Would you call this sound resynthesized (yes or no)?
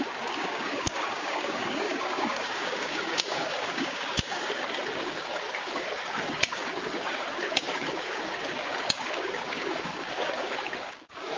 yes